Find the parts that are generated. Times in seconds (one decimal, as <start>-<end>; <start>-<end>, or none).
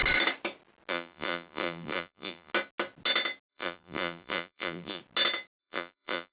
0.9-2.5; 3.5-5.0; 5.6-6.3